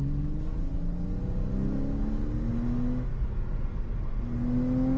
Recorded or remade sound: recorded